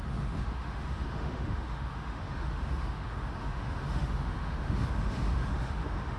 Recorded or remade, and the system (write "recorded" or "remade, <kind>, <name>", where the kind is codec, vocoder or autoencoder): remade, autoencoder, DAC-VAE